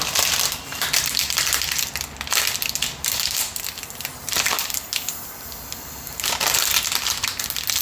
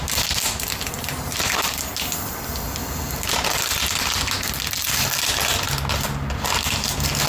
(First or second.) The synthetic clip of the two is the first